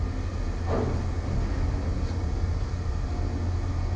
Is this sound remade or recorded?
recorded